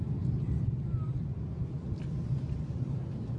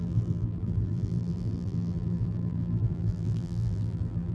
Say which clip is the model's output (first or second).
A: second